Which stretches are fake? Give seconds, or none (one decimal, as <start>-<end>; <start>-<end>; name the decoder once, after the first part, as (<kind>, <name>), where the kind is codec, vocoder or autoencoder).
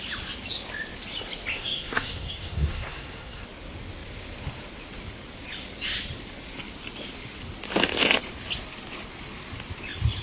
1.5-3.4 (codec, SNAC)